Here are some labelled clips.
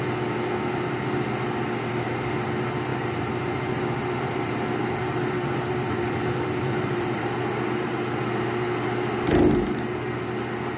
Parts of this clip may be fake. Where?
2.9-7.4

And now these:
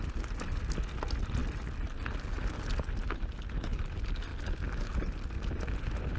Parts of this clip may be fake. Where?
none

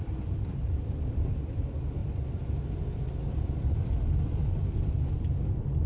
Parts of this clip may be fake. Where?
0.0-2.0; 2.8-5.9

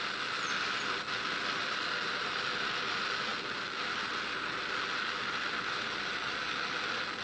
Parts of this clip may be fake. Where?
none

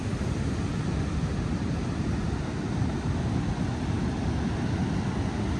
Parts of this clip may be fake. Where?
0.0-0.7